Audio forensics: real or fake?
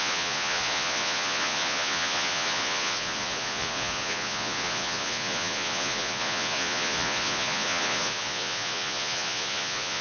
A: fake